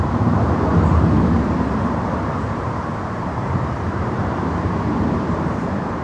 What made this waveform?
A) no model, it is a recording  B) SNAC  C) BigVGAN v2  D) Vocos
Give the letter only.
C